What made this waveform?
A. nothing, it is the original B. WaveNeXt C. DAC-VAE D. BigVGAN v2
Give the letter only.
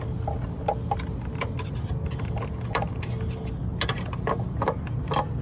A